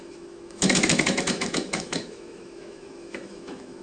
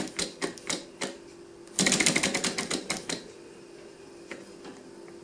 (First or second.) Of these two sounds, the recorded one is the second